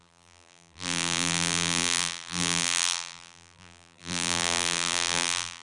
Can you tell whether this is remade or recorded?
remade